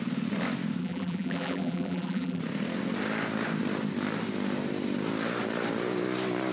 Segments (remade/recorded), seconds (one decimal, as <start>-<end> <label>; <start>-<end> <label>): 0.0-0.8 recorded; 0.8-2.4 remade; 2.4-6.5 recorded